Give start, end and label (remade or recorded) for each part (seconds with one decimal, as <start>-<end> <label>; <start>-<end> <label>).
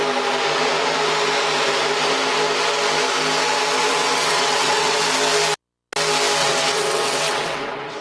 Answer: 0.0-3.9 recorded; 3.9-5.0 remade; 5.0-6.4 recorded; 6.4-8.0 remade